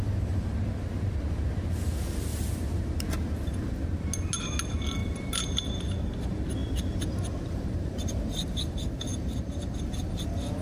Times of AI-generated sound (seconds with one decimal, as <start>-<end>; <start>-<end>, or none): 5.0-5.8; 6.6-8.7; 9.1-9.8